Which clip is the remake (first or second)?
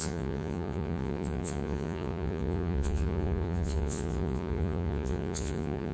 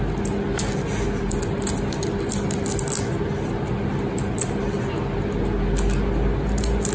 first